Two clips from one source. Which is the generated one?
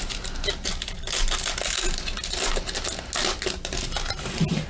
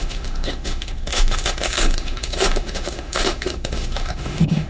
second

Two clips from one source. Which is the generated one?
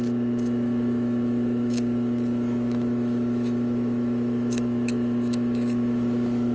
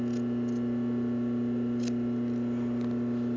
first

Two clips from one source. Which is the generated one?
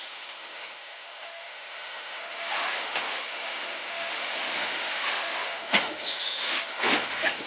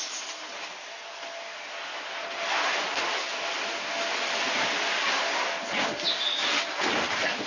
first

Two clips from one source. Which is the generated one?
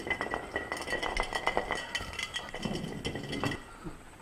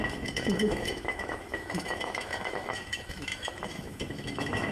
second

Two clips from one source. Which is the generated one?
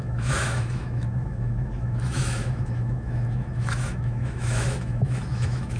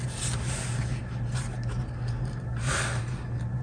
first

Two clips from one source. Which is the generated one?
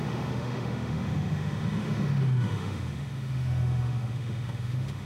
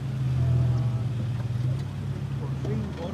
first